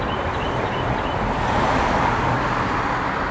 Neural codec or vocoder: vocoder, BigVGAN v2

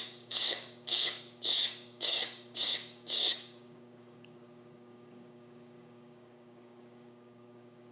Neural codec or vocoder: codec, DAC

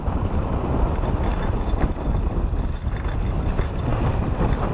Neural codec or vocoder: none